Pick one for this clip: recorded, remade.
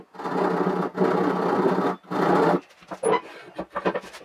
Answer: recorded